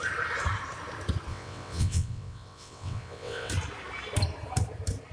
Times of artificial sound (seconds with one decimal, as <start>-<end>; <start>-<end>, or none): 1.3-3.5